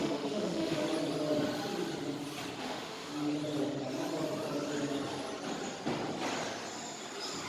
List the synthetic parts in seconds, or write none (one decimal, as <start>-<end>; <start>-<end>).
0.0-0.8; 2.6-3.1